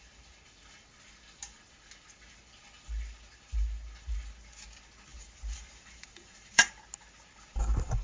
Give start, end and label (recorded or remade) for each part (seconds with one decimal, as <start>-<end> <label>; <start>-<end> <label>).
0.0-5.1 recorded; 5.1-6.7 remade; 6.7-8.0 recorded